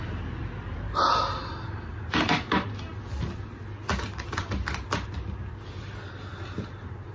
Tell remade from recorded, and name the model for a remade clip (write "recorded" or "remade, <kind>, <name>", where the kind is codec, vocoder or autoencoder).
recorded